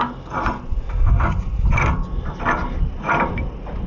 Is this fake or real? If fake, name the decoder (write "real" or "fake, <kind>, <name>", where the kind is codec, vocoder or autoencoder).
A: real